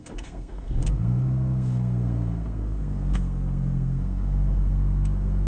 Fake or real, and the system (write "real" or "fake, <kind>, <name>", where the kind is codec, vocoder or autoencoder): fake, codec, SNAC